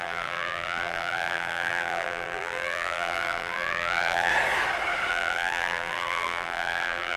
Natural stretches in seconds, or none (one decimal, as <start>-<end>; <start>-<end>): 4.3-5.1